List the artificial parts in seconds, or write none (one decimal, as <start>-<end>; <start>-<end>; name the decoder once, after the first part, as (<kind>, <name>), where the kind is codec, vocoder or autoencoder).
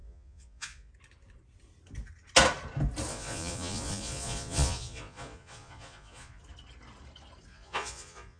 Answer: 0.0-0.9 (vocoder, Vocos); 3.1-6.4; 7.5-8.4